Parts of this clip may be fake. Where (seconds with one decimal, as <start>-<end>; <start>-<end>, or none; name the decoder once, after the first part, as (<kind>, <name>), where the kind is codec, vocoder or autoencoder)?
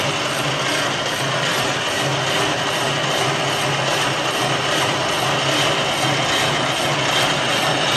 0.0-2.1 (vocoder, BigVGAN v2); 6.9-8.0